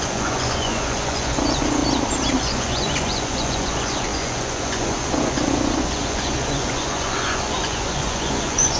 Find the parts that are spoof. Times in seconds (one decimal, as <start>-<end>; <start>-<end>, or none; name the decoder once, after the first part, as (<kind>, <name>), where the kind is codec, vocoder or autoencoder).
0.0-1.8 (vocoder, Vocos); 2.4-8.8